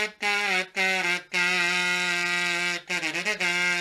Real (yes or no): yes